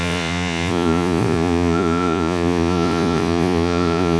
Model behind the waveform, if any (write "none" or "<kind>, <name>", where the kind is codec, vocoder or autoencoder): vocoder, Vocos